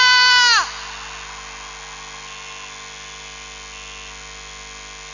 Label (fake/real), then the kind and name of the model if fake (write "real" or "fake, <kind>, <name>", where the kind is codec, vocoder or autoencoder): real